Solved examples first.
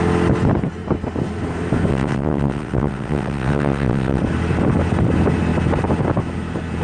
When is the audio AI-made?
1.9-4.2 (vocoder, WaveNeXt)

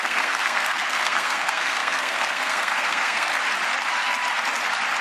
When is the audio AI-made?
0.0-3.3 (codec, SNAC)

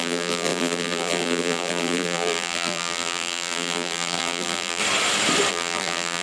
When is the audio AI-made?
0.0-4.8 (vocoder, BigVGAN v2); 5.5-6.2

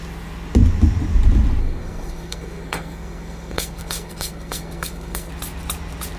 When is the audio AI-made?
1.6-5.3 (codec, SNAC)

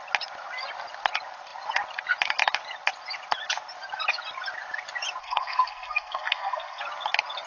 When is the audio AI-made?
5.2-6.8 (codec, SNAC)

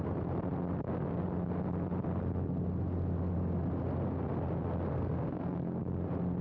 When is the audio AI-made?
4.9-5.8 (codec, SNAC)